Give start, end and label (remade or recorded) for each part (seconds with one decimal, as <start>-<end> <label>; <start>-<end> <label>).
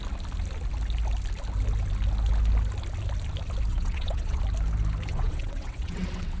0.0-3.7 recorded; 3.7-4.4 remade; 4.4-5.1 recorded; 5.1-6.4 remade